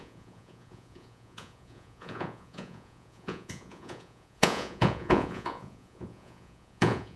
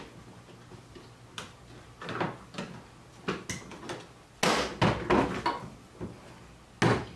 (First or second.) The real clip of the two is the second